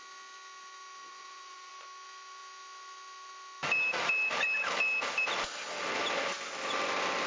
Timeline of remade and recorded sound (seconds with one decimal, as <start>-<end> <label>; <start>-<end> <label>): 0.0-1.1 recorded; 1.1-1.7 remade; 1.7-7.3 recorded